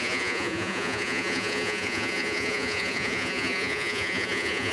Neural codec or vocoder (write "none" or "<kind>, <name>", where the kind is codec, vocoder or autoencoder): vocoder, Vocos